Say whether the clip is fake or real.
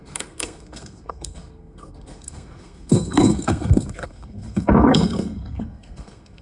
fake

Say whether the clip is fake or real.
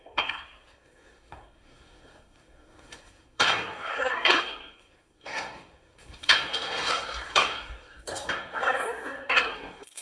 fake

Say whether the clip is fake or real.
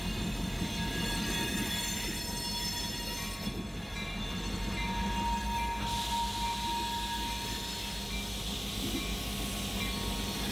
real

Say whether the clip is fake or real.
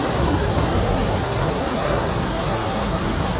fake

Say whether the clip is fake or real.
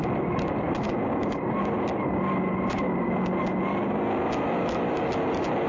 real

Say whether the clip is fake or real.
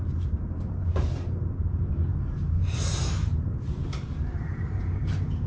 fake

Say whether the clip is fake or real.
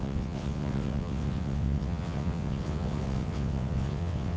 fake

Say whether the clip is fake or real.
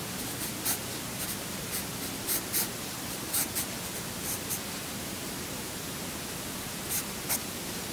real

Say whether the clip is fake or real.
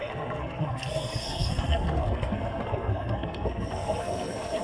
fake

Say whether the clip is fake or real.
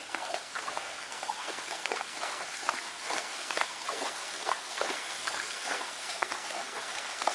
fake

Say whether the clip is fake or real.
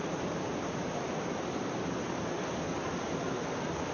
real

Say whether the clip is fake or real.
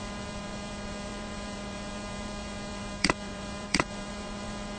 fake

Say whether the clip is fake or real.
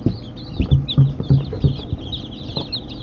real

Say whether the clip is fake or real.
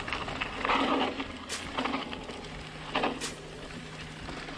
real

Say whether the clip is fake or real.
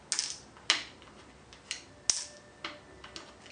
real